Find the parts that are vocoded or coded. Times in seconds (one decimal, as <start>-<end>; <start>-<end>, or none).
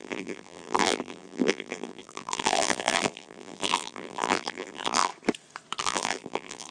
0.0-5.1; 5.8-6.7